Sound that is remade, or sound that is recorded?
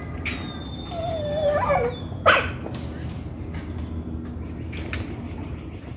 recorded